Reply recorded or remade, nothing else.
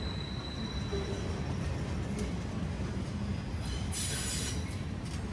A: recorded